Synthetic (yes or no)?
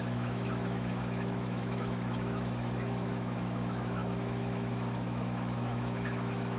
yes